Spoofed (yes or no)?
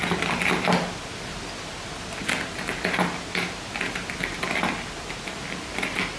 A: no